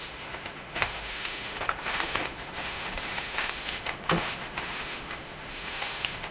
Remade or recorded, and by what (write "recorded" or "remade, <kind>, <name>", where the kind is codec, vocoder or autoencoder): remade, autoencoder, DAC-VAE